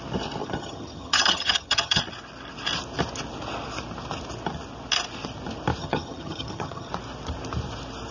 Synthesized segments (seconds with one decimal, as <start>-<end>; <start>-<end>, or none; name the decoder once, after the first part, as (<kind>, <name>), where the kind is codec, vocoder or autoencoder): 0.4-2.0 (vocoder, HiFi-GAN); 5.8-6.9